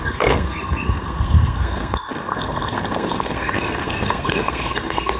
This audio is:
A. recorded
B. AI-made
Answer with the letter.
B